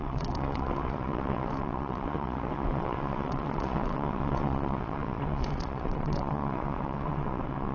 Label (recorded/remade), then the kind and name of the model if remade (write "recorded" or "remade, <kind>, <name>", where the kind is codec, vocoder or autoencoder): remade, vocoder, WaveNeXt